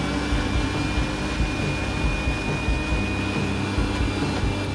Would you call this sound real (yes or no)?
yes